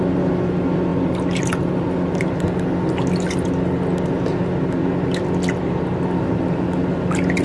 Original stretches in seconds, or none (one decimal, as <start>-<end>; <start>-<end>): 0.0-7.4